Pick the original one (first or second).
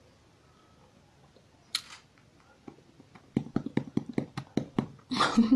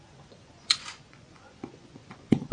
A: first